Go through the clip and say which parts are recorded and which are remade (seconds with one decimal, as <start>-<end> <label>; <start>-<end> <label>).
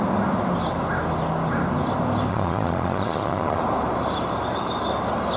0.0-2.3 recorded; 2.3-3.6 remade; 3.6-5.4 recorded